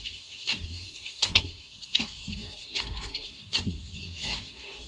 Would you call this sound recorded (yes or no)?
no